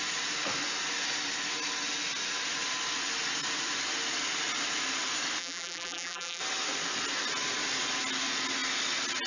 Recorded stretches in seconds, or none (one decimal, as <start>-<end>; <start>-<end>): 0.0-5.4; 6.4-9.3